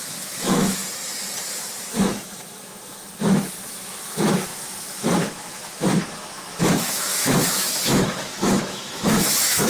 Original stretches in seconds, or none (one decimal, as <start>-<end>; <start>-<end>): 0.8-1.7